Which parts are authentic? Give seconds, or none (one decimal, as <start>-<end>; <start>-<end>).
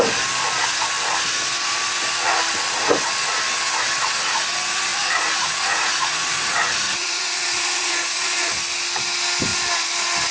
0.0-4.9; 8.5-10.3